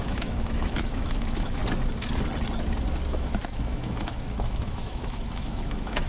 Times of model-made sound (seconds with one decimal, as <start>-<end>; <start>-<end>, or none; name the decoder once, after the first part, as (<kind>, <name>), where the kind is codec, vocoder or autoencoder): 0.0-1.6 (autoencoder, DAC-VAE); 3.1-6.1